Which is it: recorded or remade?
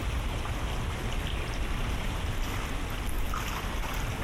recorded